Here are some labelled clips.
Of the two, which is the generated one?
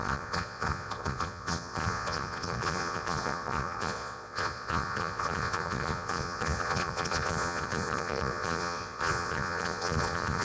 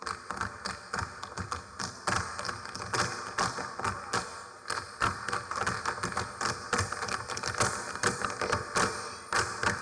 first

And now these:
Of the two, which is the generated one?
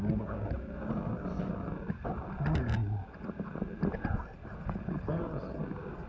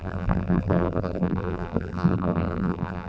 second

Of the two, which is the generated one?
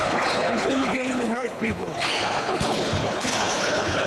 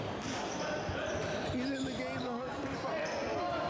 first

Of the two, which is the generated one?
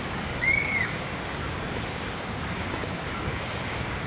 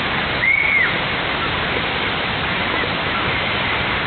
first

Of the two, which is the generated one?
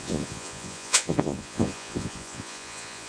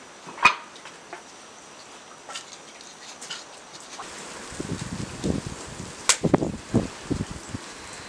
first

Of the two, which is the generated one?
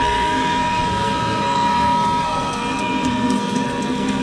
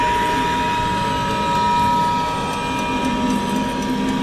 first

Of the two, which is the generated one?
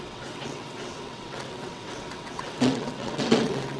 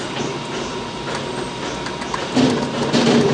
first